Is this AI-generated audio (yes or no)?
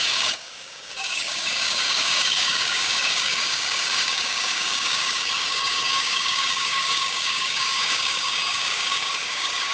yes